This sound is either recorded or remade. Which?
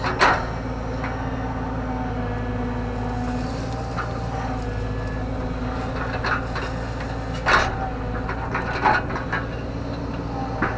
recorded